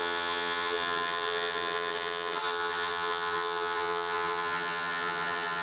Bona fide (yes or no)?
no